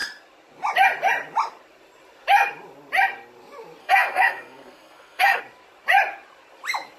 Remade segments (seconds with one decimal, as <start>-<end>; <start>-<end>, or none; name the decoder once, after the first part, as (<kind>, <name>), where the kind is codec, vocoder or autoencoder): 3.8-5.4 (codec, SNAC)